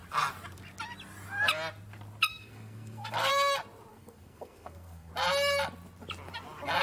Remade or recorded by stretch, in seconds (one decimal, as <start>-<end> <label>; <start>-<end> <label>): 0.0-2.3 recorded; 2.3-3.3 remade; 3.3-3.9 recorded; 3.9-5.1 remade; 5.1-6.8 recorded